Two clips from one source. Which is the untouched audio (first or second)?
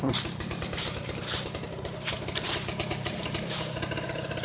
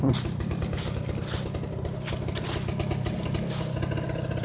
second